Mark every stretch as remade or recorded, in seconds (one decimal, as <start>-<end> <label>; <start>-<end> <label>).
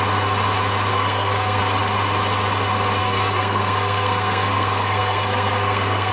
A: 0.0-0.9 recorded; 0.9-1.6 remade; 1.6-3.0 recorded; 3.0-6.1 remade